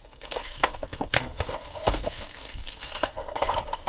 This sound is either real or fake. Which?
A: fake